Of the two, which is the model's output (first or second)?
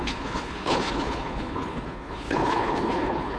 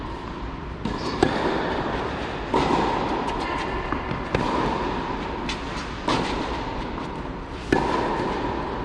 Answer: first